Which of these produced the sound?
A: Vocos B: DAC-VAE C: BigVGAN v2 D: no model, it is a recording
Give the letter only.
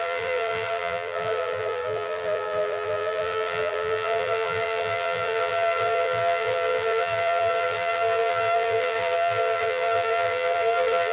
C